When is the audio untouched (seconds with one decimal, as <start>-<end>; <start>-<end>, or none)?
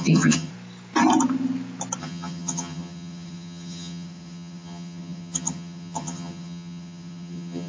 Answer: 0.5-2.0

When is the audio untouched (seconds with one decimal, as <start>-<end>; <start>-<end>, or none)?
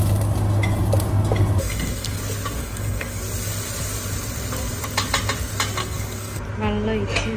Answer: 0.0-1.6; 2.2-2.6; 3.2-5.8; 6.4-7.4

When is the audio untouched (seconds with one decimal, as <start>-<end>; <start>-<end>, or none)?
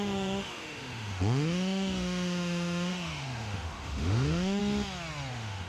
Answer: 4.6-5.3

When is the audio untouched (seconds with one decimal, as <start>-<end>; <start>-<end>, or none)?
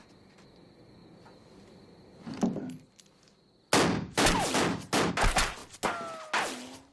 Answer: 0.0-6.9